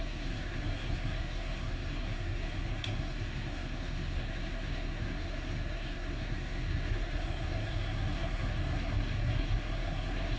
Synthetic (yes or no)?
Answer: yes